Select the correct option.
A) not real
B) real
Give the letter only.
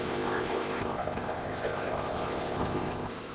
A